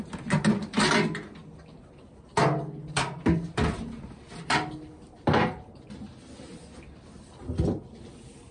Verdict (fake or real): real